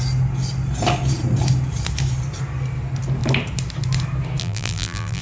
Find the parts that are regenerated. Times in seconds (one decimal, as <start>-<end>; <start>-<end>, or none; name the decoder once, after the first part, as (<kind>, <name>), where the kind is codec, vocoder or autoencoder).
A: 4.4-5.2 (vocoder, BigVGAN v2)